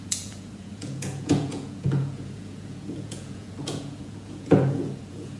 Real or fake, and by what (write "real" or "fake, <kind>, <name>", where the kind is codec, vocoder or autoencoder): fake, vocoder, Vocos